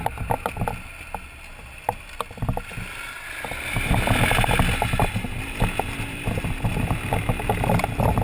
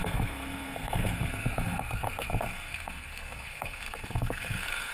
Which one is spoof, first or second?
second